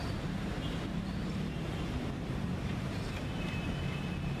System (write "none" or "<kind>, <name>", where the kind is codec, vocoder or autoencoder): vocoder, BigVGAN v2